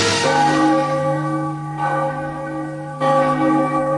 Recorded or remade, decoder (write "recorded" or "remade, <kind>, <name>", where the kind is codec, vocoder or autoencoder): remade, codec, SNAC